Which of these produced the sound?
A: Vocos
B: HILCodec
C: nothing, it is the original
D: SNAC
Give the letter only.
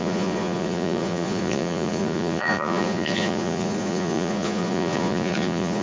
A